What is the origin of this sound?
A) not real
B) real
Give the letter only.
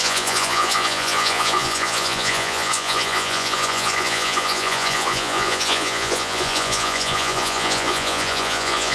A